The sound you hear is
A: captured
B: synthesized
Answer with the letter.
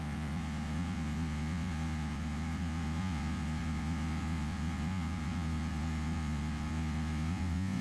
B